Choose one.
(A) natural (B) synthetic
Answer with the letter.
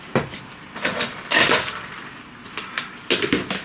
A